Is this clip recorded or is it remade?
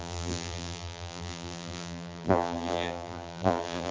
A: remade